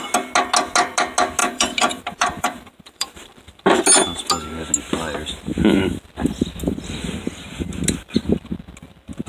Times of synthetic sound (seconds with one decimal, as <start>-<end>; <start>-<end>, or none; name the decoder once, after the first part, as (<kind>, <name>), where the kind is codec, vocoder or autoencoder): 1.4-3.3 (vocoder, BigVGAN v2)

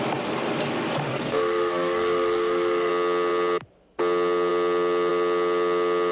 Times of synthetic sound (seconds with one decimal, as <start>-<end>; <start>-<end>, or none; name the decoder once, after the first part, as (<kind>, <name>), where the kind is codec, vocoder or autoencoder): 1.1-2.9 (codec, SNAC)

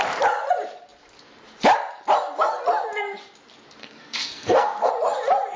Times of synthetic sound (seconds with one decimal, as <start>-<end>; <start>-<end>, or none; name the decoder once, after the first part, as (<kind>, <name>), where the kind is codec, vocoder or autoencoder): 3.8-4.9 (codec, SNAC)

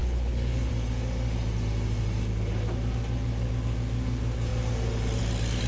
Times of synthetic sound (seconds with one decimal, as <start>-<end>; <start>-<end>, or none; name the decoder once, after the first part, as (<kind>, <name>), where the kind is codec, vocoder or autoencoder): 0.0-0.7 (codec, HILCodec)

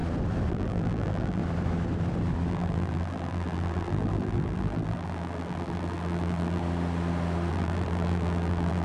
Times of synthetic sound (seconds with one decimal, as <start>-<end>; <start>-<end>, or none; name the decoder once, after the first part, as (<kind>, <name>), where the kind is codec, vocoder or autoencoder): 0.5-1.4 (vocoder, BigVGAN v2); 2.5-6.6; 7.5-8.8